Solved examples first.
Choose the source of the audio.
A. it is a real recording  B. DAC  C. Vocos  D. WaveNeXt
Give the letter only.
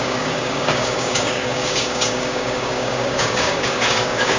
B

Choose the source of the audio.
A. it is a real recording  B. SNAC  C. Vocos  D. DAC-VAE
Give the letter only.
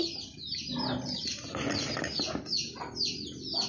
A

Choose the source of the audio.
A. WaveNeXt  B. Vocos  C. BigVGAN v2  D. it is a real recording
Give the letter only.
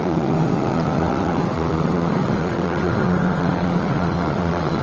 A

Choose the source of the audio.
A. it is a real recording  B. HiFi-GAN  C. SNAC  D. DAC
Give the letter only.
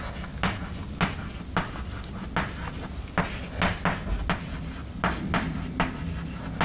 A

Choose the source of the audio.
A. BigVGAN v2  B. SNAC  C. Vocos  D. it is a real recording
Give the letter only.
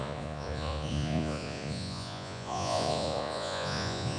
C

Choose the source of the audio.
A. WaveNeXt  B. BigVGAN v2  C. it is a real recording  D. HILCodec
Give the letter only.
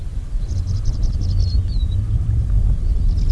C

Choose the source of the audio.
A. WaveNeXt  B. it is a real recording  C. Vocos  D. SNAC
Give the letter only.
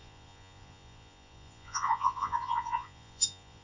C